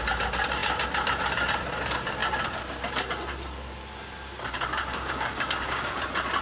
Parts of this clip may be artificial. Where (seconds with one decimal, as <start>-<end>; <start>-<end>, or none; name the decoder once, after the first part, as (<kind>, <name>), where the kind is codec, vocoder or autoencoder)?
4.9-6.0 (codec, DAC)